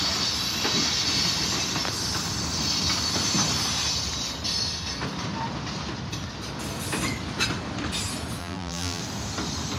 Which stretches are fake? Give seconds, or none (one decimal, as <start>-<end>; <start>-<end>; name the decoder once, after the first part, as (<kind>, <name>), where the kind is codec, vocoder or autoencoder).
8.4-9.0 (vocoder, BigVGAN v2)